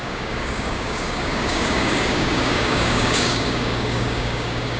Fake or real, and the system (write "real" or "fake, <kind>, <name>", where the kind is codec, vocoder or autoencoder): fake, codec, DAC